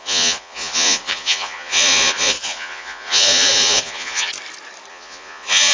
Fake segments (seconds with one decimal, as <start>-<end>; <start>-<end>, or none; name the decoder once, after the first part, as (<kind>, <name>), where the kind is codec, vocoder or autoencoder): 0.0-4.3 (vocoder, Vocos); 4.9-5.7